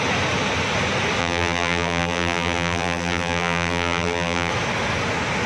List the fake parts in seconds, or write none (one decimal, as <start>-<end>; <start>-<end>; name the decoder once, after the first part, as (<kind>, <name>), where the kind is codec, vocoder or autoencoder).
1.2-4.5 (vocoder, BigVGAN v2)